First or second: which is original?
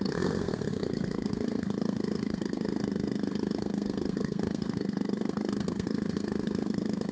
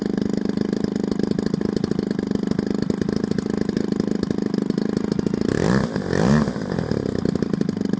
second